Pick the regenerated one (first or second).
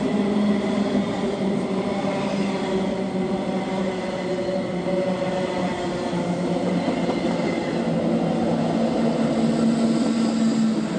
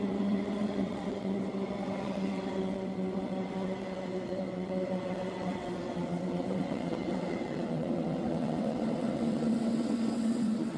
second